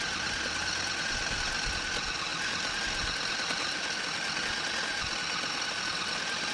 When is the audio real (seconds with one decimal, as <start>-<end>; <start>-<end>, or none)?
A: 0.0-6.5